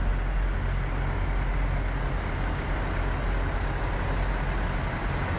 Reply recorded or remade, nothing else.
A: recorded